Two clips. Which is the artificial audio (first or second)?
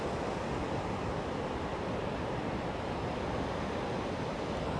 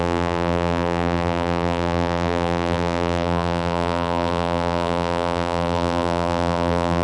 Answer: second